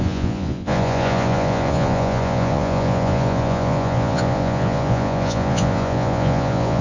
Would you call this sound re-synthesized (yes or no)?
yes